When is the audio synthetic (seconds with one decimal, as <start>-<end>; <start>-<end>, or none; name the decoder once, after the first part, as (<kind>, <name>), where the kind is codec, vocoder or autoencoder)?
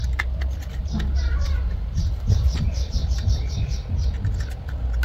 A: 0.8-3.4 (vocoder, BigVGAN v2)